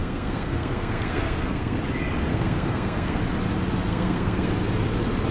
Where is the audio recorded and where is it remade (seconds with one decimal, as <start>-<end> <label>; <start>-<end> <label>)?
0.0-1.8 remade; 1.8-2.3 recorded; 2.3-3.2 remade; 3.2-3.9 recorded; 3.9-4.5 remade; 4.5-5.3 recorded